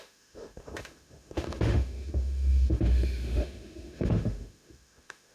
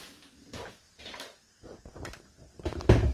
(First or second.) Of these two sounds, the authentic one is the second